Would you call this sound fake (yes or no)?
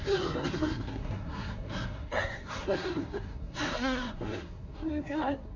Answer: yes